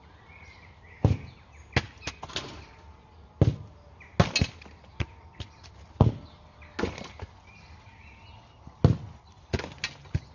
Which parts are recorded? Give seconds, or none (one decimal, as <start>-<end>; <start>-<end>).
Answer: 0.0-10.3